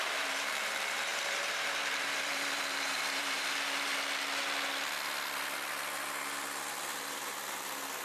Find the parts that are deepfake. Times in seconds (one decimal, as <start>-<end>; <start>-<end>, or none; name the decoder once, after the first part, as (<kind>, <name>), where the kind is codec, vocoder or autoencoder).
0.0-3.9 (vocoder, BigVGAN v2)